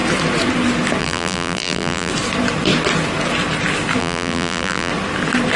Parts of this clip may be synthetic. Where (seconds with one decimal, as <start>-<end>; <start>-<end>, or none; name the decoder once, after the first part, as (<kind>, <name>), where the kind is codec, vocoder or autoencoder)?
1.0-2.1 (vocoder, BigVGAN v2); 4.0-4.9